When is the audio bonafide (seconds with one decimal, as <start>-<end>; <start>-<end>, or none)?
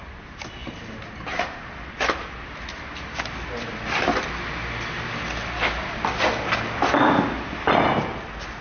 0.0-8.6